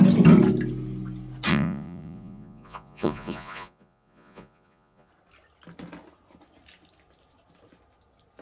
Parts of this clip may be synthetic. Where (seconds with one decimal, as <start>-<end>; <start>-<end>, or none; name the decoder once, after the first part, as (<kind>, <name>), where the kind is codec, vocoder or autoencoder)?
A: 1.5-5.1 (vocoder, Vocos)